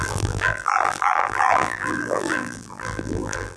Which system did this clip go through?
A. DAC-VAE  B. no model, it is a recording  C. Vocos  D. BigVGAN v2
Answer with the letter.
D